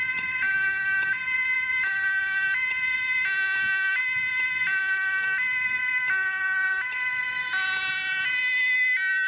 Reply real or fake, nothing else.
real